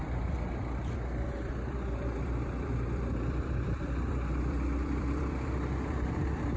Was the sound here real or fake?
fake